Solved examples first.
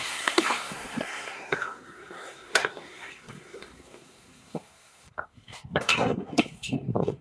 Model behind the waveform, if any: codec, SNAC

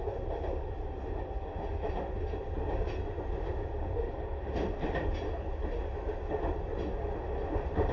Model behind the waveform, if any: none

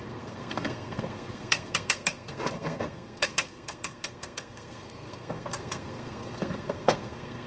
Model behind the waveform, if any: codec, SNAC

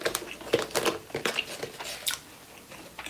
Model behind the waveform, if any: none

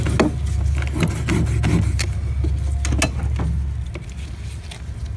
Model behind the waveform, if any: none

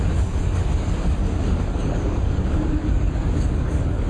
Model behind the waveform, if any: codec, DAC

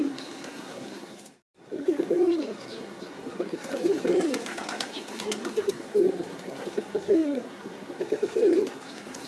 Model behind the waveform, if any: codec, SNAC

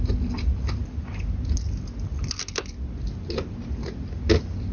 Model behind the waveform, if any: none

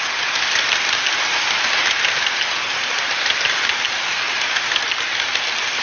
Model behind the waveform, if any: vocoder, BigVGAN v2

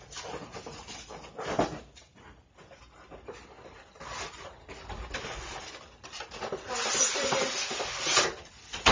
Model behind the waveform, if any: none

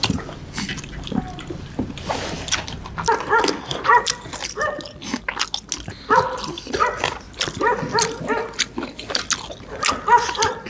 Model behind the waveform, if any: none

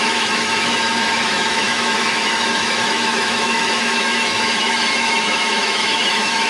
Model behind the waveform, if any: autoencoder, DAC-VAE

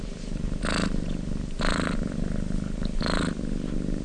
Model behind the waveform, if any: none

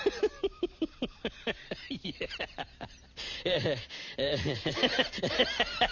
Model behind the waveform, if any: vocoder, BigVGAN v2